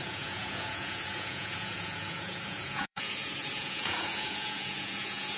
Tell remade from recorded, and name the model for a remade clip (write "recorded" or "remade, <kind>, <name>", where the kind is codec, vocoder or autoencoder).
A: remade, vocoder, Vocos